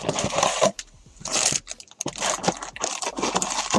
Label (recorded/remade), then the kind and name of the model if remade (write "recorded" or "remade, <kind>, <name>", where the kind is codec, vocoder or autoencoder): recorded